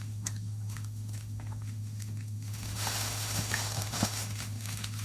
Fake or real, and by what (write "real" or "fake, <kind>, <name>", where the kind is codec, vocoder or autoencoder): fake, autoencoder, DAC-VAE